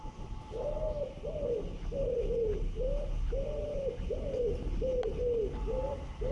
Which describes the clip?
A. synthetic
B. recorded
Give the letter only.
B